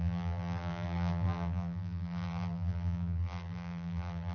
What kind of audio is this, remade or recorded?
remade